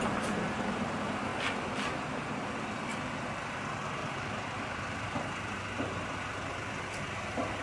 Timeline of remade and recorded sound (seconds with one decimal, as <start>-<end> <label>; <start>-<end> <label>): 0.0-4.0 recorded; 4.0-5.6 remade; 5.6-7.6 recorded